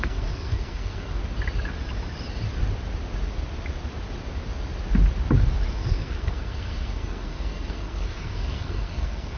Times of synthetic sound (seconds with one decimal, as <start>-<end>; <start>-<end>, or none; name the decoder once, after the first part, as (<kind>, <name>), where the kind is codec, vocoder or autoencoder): 0.0-1.2 (codec, SNAC); 5.7-9.4

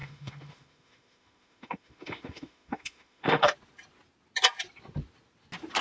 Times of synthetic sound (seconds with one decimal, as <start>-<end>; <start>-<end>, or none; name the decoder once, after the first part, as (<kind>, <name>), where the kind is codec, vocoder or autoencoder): 0.0-3.5 (autoencoder, DAC-VAE)

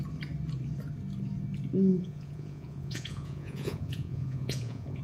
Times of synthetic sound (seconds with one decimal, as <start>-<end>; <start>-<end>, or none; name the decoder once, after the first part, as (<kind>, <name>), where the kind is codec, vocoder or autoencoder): 1.9-5.0 (vocoder, Vocos)

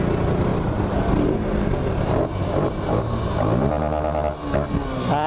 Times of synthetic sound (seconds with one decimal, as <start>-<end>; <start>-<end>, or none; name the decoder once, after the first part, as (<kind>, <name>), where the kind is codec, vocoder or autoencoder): 0.5-3.7 (vocoder, BigVGAN v2)

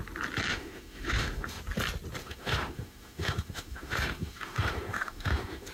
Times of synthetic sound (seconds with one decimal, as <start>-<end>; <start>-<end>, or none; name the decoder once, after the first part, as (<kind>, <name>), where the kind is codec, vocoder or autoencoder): 0.5-1.6 (autoencoder, DAC-VAE); 2.2-5.7

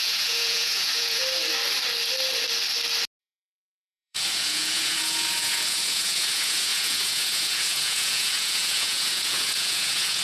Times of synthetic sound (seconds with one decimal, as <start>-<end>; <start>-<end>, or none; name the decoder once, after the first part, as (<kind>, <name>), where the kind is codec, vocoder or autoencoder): 0.0-1.2 (vocoder, Vocos); 3.2-10.2